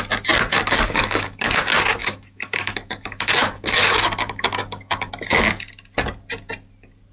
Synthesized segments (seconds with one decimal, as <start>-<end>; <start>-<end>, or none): 0.5-1.5; 2.0-5.1